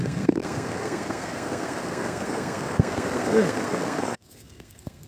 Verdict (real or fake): fake